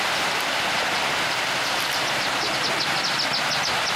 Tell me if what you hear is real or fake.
real